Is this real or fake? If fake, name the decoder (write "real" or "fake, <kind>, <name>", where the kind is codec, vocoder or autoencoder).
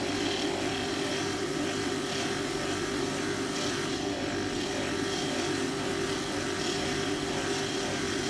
real